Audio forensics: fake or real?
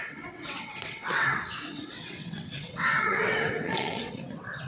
fake